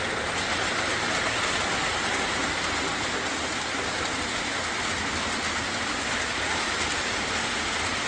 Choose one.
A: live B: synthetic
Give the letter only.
A